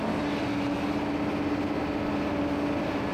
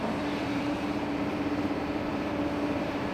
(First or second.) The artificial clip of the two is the second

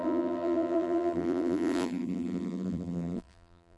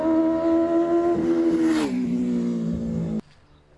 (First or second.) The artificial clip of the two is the first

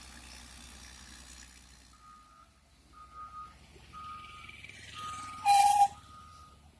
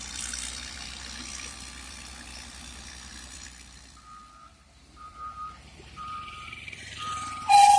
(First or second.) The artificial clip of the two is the second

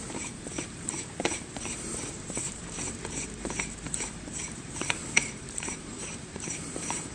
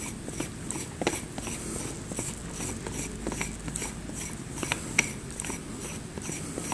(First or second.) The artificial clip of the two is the first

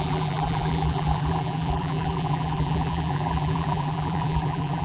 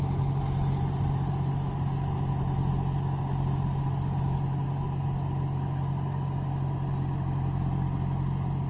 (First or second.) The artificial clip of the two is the first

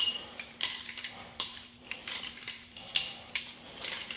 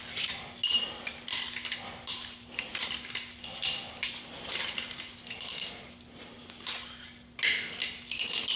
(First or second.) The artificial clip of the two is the first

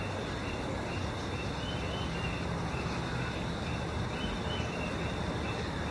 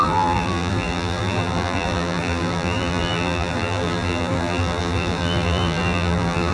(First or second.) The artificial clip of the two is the second